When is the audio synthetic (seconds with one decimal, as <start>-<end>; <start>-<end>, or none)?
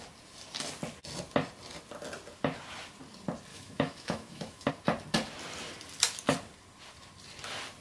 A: 3.5-4.7